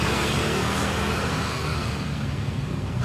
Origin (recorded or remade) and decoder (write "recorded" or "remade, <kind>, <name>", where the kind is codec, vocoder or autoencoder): remade, codec, SNAC